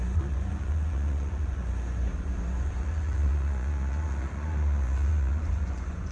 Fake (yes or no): yes